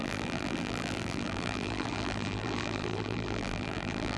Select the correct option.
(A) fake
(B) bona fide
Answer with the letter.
A